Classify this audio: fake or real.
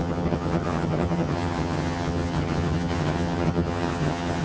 fake